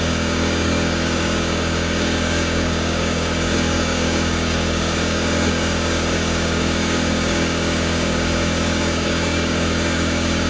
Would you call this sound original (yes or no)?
no